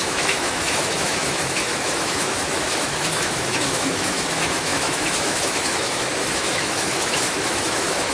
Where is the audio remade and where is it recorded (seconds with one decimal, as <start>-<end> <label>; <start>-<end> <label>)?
0.0-8.1 remade